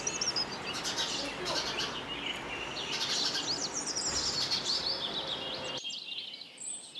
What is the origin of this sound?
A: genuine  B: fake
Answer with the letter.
A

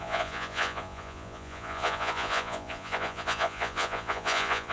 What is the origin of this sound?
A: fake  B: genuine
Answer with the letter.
A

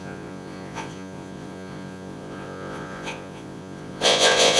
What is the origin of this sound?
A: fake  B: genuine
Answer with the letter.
A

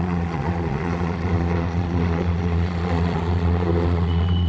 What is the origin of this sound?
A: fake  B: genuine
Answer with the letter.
A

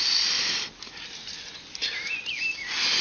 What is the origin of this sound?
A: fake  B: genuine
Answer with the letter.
B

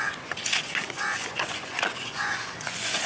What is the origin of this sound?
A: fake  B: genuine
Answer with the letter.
A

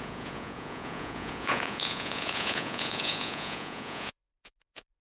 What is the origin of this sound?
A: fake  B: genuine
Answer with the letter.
A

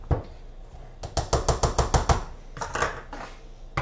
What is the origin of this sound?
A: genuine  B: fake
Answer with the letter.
A